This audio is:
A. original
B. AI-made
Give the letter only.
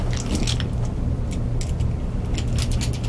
A